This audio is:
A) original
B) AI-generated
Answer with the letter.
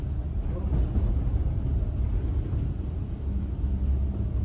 A